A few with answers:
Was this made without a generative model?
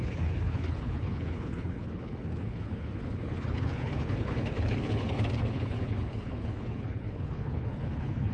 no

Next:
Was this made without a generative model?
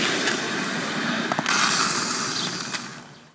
yes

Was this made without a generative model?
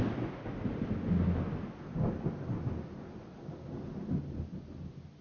yes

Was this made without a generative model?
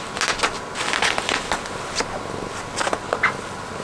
yes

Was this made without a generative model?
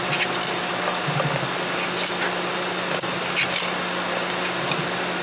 yes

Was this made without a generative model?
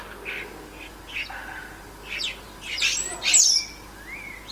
yes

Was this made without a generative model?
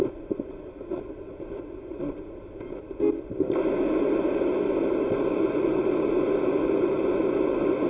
yes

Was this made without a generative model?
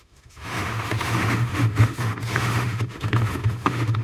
no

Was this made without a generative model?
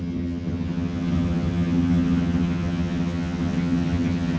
no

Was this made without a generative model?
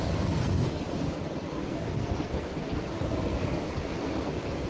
no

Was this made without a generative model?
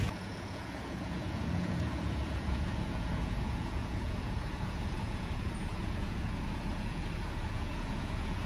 no